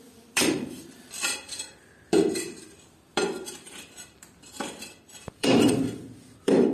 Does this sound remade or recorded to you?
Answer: remade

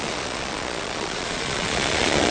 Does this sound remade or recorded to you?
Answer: remade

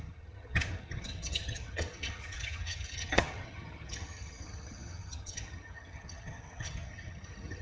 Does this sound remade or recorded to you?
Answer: remade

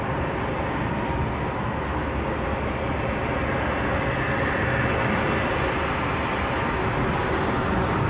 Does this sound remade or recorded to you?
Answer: recorded